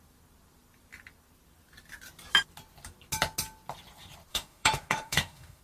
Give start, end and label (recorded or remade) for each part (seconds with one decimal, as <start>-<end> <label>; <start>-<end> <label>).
0.0-4.3 recorded; 4.3-5.6 remade